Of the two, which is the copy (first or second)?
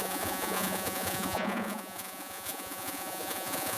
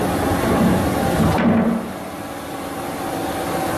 first